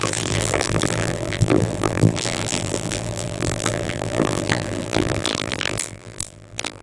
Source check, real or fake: fake